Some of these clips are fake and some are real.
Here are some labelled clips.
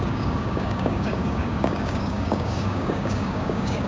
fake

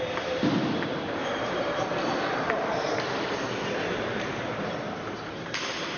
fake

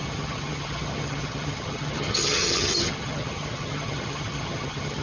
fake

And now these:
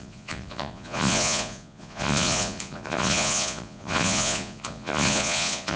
fake